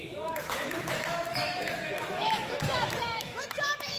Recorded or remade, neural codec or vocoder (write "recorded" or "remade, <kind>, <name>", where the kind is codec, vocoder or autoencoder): remade, autoencoder, DAC-VAE